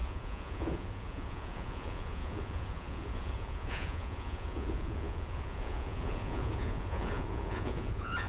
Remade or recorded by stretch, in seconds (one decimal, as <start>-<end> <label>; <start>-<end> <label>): 0.0-8.3 remade